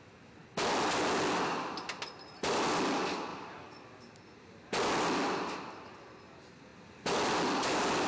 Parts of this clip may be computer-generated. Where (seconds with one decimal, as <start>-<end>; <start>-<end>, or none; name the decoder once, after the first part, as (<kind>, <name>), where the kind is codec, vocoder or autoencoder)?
none